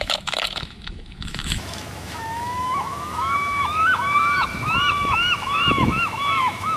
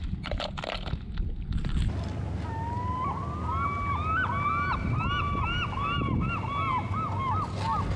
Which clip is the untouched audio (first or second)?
second